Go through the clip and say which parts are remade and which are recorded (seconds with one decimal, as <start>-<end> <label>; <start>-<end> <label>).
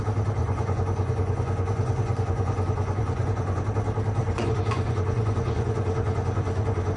0.0-0.4 recorded; 0.4-3.6 remade; 3.6-4.2 recorded; 4.2-7.0 remade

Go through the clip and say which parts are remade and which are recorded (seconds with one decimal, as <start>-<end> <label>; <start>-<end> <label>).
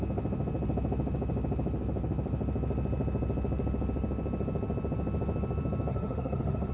0.0-5.9 recorded; 5.9-6.7 remade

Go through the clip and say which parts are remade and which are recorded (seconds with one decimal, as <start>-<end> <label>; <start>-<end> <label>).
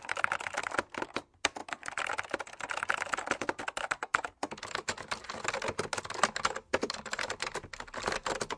0.0-8.6 recorded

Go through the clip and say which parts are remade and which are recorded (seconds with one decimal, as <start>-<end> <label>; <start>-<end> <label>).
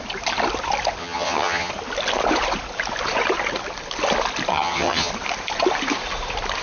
0.0-1.0 recorded; 1.0-1.7 remade; 1.7-4.5 recorded; 4.5-5.1 remade; 5.1-6.6 recorded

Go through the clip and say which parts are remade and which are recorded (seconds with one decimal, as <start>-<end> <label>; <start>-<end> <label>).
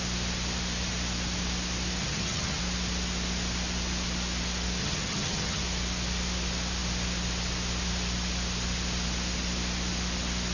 0.0-2.0 recorded; 2.0-2.6 remade; 2.6-4.8 recorded; 4.8-5.6 remade; 5.6-10.5 recorded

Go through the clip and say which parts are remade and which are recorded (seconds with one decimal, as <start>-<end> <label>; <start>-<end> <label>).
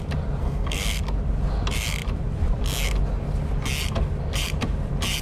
0.0-0.4 recorded; 0.4-1.0 remade; 1.0-5.2 recorded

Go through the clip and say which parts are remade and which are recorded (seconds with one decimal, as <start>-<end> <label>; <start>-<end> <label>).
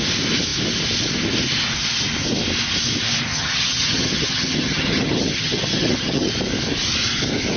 0.0-3.3 recorded; 3.3-6.3 remade; 6.3-7.6 recorded